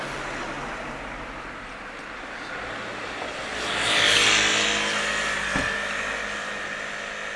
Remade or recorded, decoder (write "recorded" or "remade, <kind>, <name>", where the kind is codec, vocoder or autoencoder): recorded